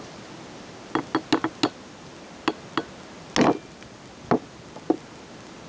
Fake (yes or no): no